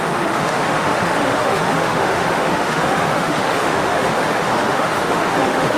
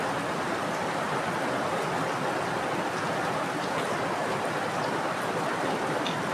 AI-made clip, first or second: first